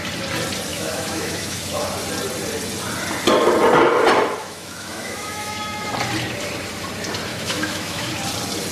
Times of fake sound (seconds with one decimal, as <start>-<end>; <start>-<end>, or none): 0.7-1.8; 4.4-5.9; 7.3-8.1